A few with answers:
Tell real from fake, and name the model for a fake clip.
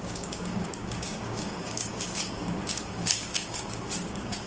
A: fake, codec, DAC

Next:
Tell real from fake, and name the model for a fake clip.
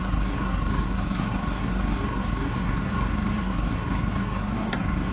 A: fake, codec, SNAC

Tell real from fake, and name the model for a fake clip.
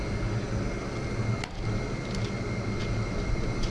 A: real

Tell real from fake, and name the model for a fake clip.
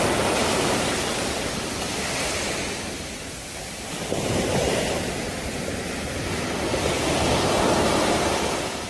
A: real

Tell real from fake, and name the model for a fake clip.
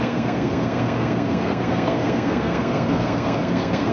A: fake, codec, SNAC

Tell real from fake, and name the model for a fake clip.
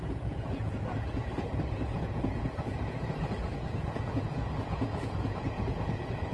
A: fake, vocoder, Vocos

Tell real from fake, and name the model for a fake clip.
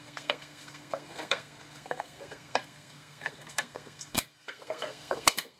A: fake, codec, SNAC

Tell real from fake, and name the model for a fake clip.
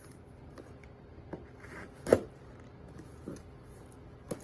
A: real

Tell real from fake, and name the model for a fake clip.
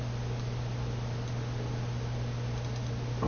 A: real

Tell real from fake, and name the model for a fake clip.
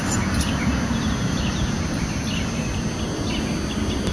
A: real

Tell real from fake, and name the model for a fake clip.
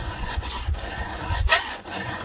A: fake, vocoder, Vocos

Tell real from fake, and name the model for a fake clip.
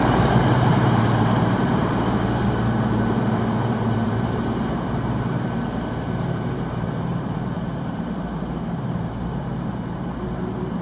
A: fake, vocoder, BigVGAN v2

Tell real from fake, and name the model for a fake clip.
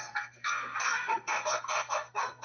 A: fake, codec, SNAC